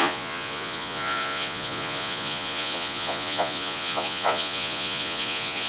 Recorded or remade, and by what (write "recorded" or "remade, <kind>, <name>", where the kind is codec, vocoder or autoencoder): remade, vocoder, Vocos